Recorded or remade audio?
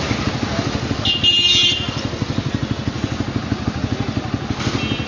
recorded